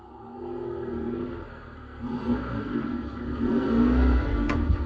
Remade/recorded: remade